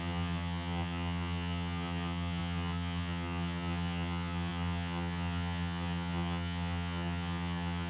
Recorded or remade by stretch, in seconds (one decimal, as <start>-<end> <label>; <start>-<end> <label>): 0.0-7.9 remade